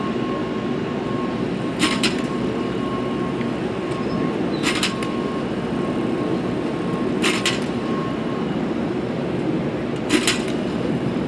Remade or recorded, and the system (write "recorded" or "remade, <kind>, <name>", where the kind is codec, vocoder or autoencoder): recorded